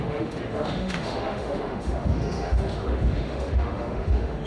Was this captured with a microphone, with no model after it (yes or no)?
no